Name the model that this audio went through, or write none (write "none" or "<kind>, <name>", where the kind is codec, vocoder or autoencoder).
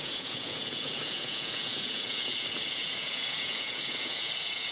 vocoder, Vocos